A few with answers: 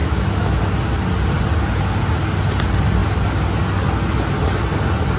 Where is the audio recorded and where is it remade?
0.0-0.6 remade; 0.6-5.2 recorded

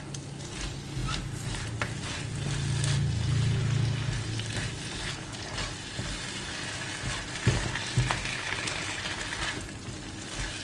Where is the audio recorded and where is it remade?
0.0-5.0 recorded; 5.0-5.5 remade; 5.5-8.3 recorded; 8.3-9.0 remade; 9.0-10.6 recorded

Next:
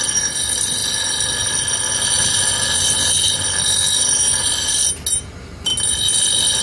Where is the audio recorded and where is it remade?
0.0-6.6 recorded